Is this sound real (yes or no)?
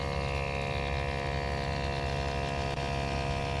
yes